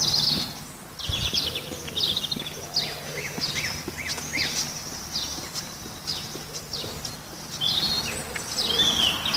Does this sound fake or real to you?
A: real